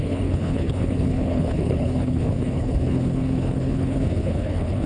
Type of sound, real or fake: fake